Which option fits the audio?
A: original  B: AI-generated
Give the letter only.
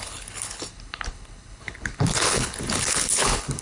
B